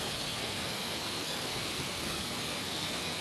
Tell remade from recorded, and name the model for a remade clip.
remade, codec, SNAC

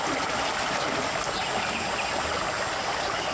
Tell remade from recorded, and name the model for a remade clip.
recorded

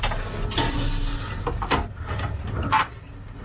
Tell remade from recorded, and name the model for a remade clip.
recorded